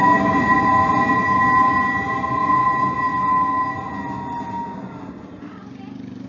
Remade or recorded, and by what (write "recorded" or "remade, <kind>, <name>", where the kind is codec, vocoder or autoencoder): recorded